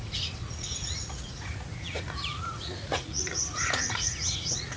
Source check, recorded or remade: remade